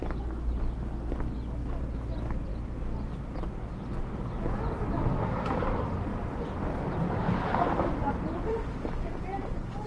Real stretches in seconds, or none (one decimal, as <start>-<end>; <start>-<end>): 0.0-6.1; 8.6-9.9